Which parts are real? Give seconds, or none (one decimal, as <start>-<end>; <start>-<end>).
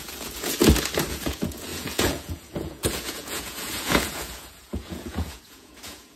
0.6-1.1